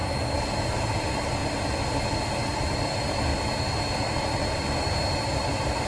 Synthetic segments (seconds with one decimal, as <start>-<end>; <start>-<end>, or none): 0.7-1.4; 2.1-3.3; 4.2-5.9